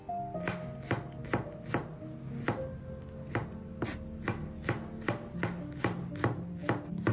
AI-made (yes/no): no